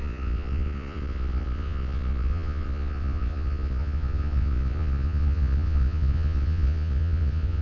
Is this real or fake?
fake